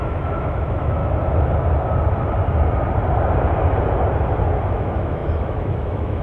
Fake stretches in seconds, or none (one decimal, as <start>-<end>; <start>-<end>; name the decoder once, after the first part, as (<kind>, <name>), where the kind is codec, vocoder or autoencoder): 0.0-1.0 (autoencoder, DAC-VAE); 4.7-6.2